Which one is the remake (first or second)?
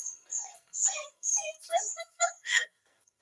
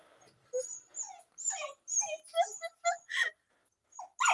first